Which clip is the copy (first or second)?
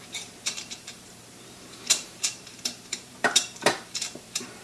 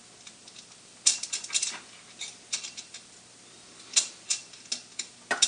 first